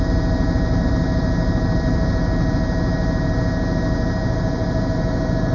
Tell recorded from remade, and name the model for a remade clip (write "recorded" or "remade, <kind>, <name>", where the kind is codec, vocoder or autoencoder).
recorded